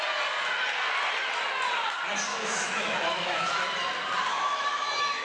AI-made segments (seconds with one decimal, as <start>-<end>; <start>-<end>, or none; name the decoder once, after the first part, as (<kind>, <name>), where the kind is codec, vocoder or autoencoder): 2.3-3.5 (autoencoder, DAC-VAE); 4.3-5.2